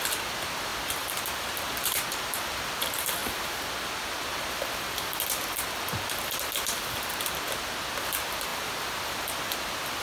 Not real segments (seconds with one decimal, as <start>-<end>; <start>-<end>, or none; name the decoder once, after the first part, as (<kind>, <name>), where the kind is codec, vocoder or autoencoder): 0.0-3.2 (vocoder, BigVGAN v2); 8.0-10.0